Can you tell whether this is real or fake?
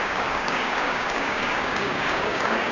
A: fake